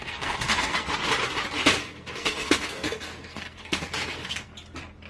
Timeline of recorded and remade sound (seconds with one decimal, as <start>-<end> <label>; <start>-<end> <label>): 0.0-0.9 remade; 0.9-1.8 recorded; 1.8-4.5 remade; 4.5-5.1 recorded